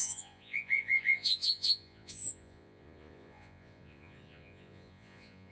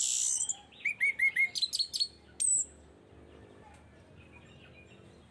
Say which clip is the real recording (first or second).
second